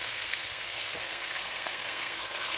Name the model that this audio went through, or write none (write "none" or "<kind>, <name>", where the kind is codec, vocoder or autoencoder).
codec, SNAC